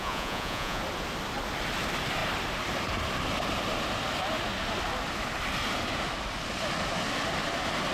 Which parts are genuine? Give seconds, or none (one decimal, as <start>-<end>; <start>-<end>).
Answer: 0.8-7.9

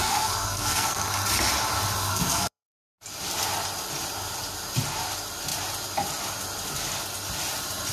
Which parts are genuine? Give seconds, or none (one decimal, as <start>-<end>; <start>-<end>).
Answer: 1.1-2.0; 3.0-7.9

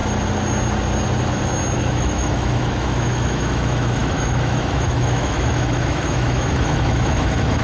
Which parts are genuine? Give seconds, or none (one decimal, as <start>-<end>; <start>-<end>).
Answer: 0.0-1.9

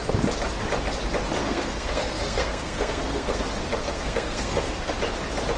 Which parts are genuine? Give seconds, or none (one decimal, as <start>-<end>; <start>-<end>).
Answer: 0.0-1.4; 3.4-3.8; 4.9-5.6

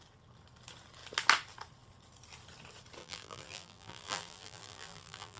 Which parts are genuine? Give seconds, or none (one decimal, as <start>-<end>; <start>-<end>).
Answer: 0.0-3.0